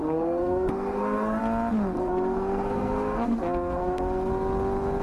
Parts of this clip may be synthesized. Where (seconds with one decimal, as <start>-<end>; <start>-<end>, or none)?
0.0-1.4; 2.0-4.3